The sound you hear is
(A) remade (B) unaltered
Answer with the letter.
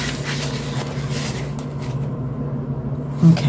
B